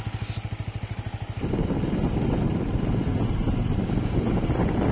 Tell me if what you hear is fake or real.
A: real